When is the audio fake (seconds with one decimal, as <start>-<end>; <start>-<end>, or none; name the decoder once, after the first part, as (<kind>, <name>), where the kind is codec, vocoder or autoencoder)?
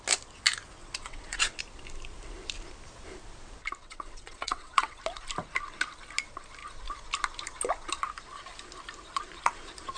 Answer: 0.8-1.6 (vocoder, WaveNeXt); 3.8-5.0